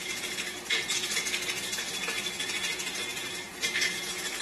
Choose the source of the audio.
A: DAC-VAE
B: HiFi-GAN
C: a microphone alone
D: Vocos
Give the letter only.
D